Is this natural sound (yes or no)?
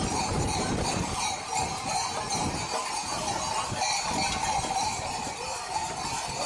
yes